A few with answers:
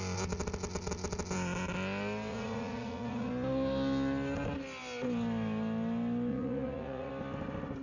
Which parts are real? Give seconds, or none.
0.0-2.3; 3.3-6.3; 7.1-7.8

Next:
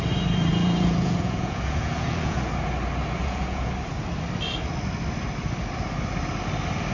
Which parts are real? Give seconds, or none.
0.0-0.5; 2.5-3.2; 3.7-6.9